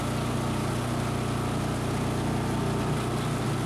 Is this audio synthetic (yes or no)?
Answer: no